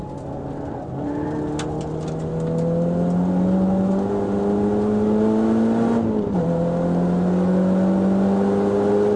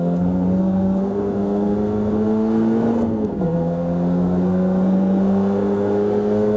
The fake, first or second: second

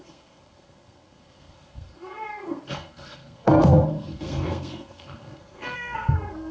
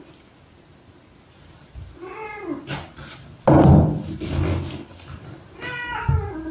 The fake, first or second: first